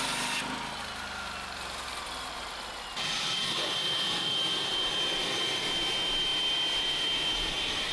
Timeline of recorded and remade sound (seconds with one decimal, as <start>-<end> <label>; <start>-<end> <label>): 0.0-7.9 recorded